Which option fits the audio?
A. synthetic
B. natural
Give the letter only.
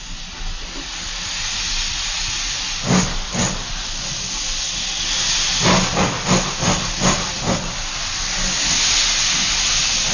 B